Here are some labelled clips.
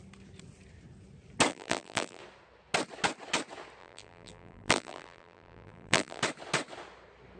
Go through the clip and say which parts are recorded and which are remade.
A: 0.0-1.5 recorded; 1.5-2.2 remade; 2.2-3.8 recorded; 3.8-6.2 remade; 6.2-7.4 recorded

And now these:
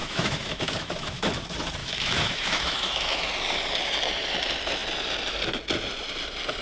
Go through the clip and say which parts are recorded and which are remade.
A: 0.0-1.3 remade; 1.3-1.8 recorded; 1.8-3.2 remade; 3.2-6.6 recorded

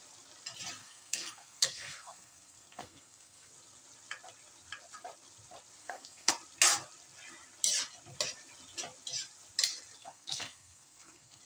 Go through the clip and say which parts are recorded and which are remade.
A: 0.0-0.8 recorded; 0.8-3.5 remade; 3.5-5.8 recorded; 5.8-6.3 remade; 6.3-10.0 recorded; 10.0-11.4 remade

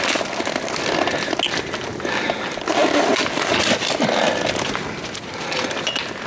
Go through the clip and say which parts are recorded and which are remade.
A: 0.0-6.3 recorded

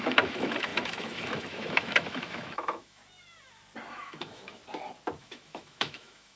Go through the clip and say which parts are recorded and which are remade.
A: 0.0-3.0 remade; 3.0-3.9 recorded; 3.9-4.6 remade; 4.6-5.2 recorded; 5.2-6.4 remade

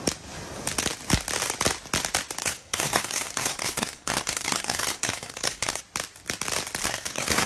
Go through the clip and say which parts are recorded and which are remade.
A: 0.0-2.4 recorded; 2.4-5.8 remade; 5.8-6.8 recorded; 6.8-7.5 remade

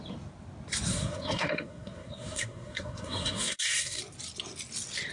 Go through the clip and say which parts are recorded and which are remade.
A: 0.0-0.9 recorded; 0.9-4.0 remade; 4.0-5.1 recorded

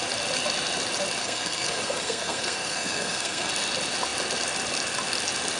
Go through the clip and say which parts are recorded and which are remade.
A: 0.0-1.2 recorded; 1.2-3.5 remade; 3.5-5.6 recorded